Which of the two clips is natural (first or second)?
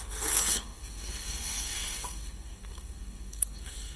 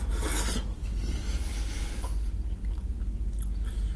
second